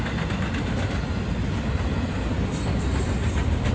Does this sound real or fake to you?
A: real